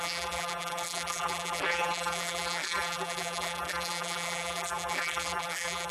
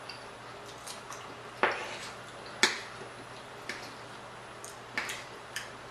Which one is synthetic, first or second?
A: first